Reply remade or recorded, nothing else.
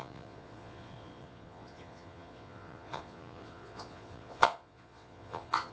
remade